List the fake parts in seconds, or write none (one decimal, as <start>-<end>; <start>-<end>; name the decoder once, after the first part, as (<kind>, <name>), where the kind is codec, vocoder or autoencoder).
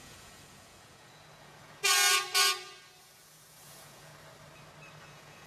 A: 0.0-1.8 (vocoder, Vocos); 3.0-4.1; 5.0-5.5